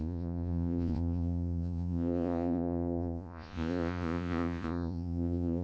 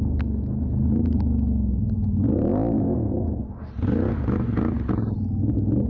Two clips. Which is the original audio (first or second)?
second